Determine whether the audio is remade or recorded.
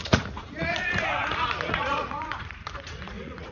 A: remade